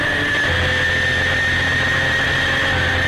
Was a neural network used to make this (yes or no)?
no